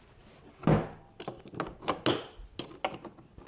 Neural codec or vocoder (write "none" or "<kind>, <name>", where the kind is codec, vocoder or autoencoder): none